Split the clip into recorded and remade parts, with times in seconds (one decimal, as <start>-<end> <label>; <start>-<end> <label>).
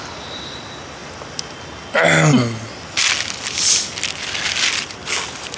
0.0-5.6 recorded